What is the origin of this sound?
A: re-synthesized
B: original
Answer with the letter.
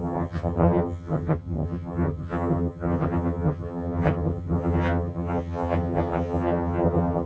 A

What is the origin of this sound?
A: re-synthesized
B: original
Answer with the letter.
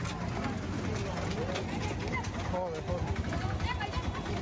B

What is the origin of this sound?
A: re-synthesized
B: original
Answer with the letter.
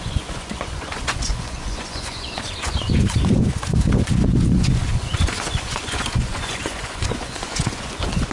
A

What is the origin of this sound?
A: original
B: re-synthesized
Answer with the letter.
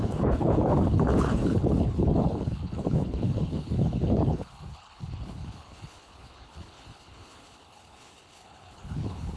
B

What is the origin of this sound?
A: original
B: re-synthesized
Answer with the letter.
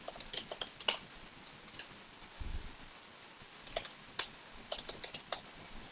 A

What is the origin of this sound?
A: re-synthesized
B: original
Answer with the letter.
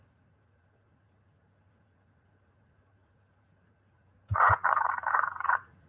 A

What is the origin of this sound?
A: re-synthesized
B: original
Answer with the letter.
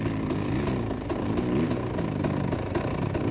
B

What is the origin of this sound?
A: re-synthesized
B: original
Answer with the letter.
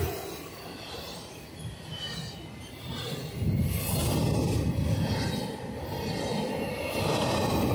B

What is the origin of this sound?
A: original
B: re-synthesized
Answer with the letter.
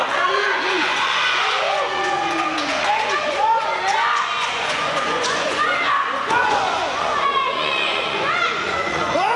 B